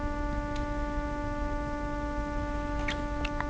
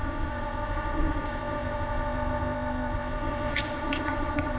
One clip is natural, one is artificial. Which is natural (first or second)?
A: first